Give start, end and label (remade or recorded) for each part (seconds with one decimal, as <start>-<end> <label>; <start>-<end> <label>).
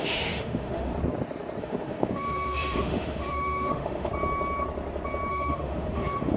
0.0-0.9 remade; 0.9-1.6 recorded; 1.6-4.1 remade; 4.1-5.3 recorded; 5.3-6.4 remade